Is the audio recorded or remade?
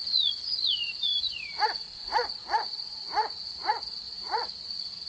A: remade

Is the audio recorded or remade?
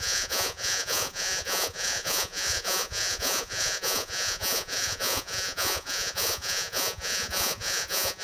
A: remade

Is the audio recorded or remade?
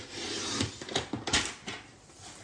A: recorded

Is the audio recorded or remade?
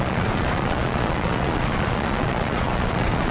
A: remade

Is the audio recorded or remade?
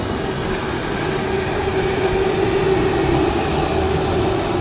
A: recorded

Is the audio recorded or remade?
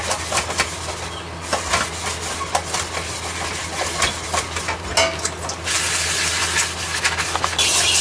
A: recorded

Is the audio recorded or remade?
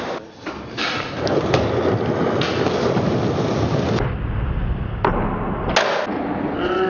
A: recorded